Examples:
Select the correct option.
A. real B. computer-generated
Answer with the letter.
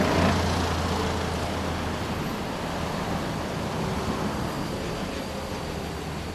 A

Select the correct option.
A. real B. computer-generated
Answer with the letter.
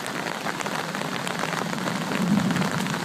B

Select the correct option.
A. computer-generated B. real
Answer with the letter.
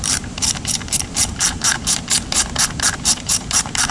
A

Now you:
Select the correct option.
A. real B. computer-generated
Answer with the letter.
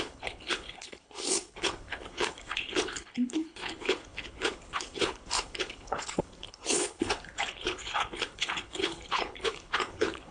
B